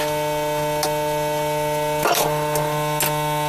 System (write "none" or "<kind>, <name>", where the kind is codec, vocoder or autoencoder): none